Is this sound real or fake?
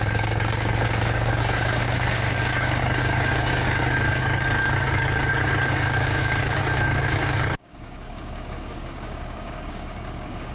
fake